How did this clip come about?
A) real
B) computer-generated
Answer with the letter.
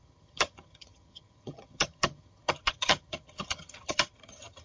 B